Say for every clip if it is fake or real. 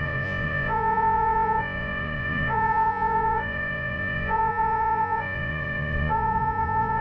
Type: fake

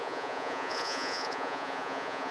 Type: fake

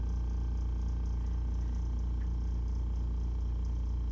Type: real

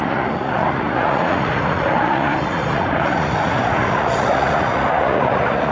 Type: fake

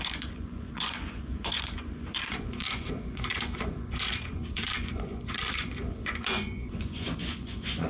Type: fake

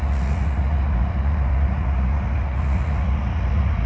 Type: fake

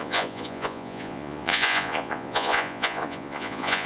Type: fake